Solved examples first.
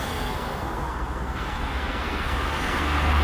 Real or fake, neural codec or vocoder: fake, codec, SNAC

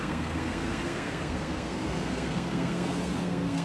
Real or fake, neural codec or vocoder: fake, codec, SNAC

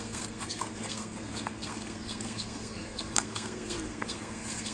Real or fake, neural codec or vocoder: fake, codec, SNAC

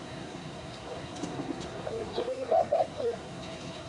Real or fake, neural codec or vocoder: fake, codec, SNAC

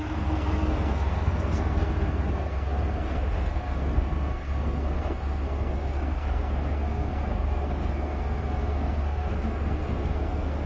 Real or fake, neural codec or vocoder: fake, codec, SNAC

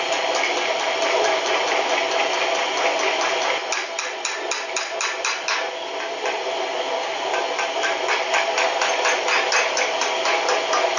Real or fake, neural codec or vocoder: real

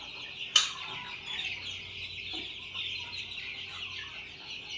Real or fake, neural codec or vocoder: real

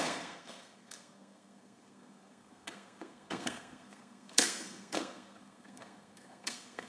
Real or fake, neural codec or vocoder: fake, codec, SNAC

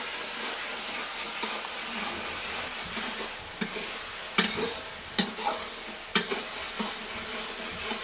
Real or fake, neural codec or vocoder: real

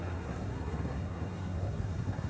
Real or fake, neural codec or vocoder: fake, codec, SNAC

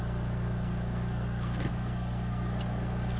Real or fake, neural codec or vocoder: fake, codec, SNAC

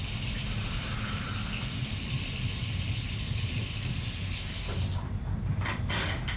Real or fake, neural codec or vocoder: real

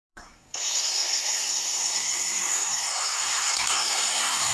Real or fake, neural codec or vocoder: fake, codec, SNAC